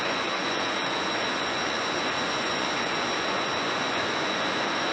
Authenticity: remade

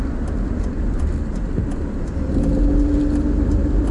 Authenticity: recorded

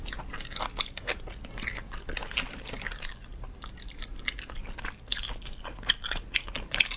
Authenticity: recorded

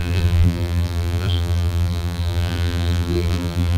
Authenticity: remade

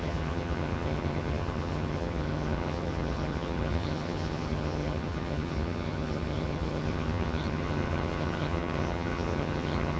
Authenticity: remade